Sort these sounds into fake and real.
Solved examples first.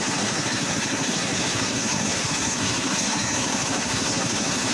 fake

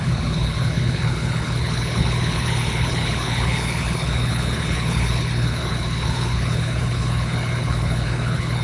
fake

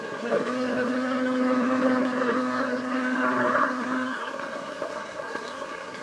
fake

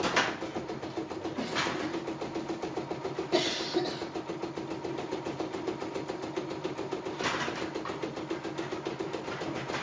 real